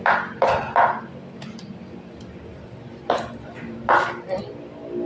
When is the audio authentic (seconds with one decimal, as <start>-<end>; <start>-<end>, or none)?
0.0-2.5; 4.4-5.1

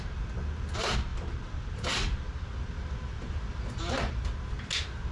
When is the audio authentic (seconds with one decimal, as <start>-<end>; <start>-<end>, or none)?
0.0-1.1; 4.2-5.1

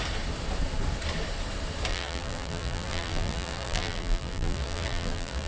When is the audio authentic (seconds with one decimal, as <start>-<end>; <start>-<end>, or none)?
0.0-1.9

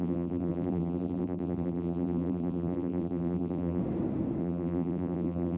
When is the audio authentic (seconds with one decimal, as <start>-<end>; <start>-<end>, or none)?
3.8-4.4

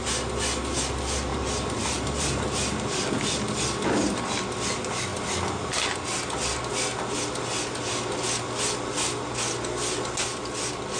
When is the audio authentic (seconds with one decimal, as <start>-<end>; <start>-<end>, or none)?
0.0-1.3; 3.1-11.0

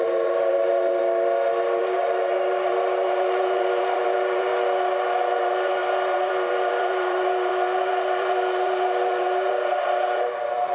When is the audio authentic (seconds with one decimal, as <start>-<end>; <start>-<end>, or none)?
1.0-1.8; 4.5-5.2